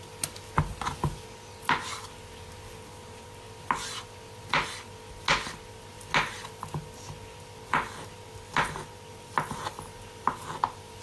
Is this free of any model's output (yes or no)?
yes